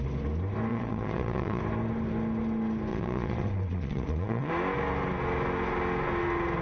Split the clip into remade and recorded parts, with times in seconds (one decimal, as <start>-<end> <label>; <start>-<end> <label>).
0.0-0.7 recorded; 0.7-1.6 remade; 1.6-2.9 recorded; 2.9-4.5 remade; 4.5-6.6 recorded